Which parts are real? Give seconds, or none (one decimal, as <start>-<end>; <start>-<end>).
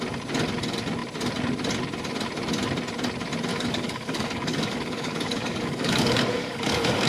0.0-3.5